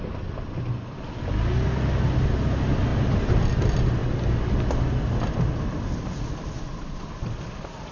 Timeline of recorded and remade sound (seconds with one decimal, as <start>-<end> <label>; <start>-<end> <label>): 0.0-7.9 recorded